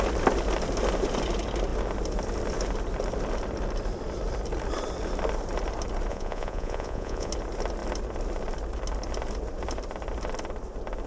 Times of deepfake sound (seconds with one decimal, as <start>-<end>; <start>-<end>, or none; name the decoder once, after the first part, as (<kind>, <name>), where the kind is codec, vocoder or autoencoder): 6.1-7.3 (vocoder, Vocos)